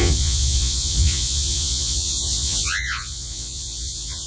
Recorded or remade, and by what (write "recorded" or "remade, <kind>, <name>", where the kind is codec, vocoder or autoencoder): remade, vocoder, Vocos